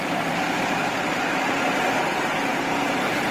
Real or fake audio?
fake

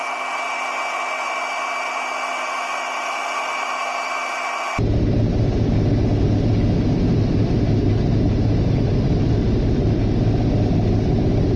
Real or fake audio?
real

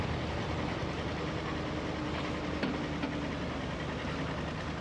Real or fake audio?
real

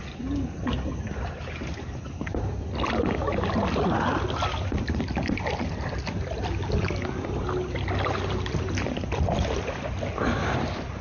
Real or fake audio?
real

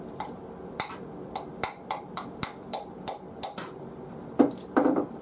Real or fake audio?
fake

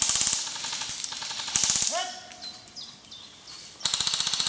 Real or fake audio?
real